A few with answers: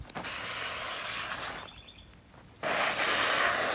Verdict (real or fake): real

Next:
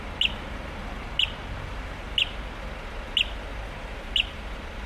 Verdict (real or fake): real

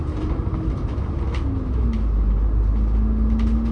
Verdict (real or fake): real